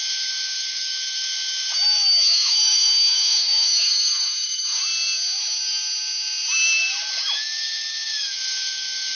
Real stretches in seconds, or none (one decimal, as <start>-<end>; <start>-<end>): 4.8-7.1